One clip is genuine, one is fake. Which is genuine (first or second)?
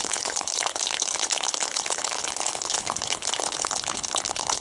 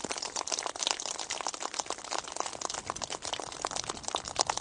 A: second